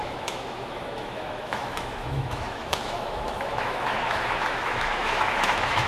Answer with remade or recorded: remade